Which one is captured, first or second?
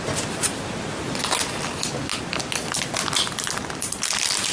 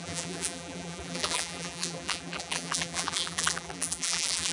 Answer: first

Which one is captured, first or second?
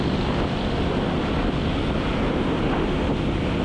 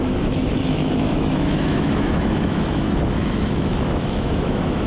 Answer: first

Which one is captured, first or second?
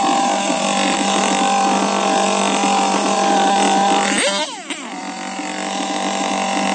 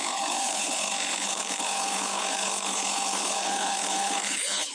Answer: first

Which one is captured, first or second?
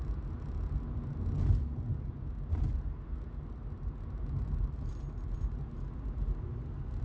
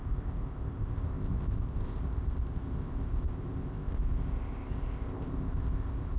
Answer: first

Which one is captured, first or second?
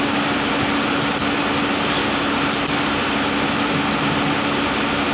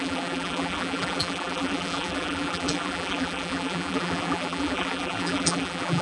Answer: first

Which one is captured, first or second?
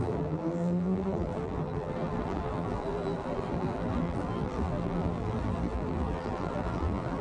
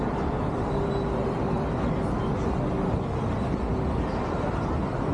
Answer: second